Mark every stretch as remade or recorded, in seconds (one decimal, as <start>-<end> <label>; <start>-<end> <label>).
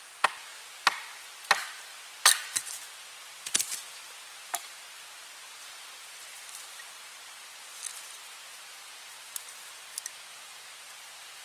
0.0-11.4 recorded